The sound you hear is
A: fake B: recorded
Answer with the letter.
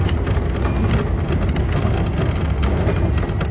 B